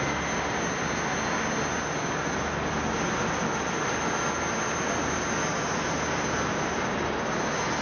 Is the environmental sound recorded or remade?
recorded